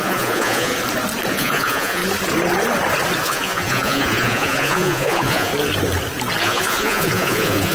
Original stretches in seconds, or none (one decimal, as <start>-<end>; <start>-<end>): 0.7-1.3; 2.0-3.2; 5.5-6.4